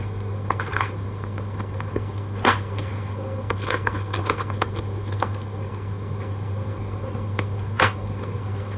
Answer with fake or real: fake